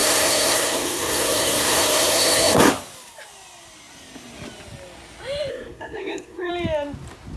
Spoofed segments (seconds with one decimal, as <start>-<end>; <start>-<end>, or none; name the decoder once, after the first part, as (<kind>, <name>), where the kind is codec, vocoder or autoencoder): 0.0-2.7 (codec, SNAC); 5.5-6.5